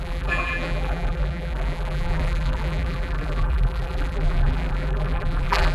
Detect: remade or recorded remade